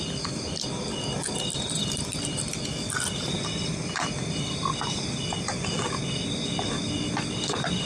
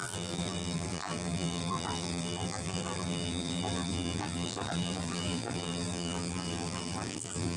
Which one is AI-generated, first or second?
second